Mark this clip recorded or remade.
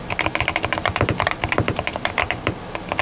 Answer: recorded